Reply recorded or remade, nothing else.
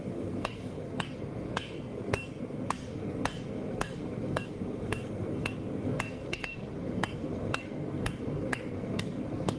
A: remade